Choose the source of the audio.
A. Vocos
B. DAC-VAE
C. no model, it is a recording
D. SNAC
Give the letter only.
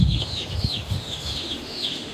B